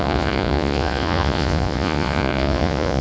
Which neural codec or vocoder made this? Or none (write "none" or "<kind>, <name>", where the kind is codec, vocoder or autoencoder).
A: vocoder, Vocos